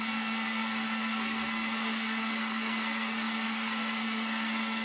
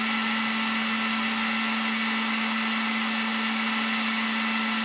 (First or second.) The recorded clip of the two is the second